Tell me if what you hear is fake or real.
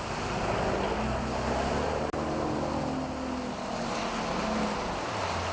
real